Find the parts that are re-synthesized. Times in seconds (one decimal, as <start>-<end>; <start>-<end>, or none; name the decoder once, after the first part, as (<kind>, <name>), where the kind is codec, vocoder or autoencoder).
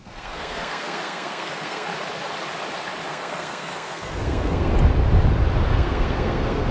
0.0-1.9 (codec, SNAC); 3.1-4.7; 5.7-6.7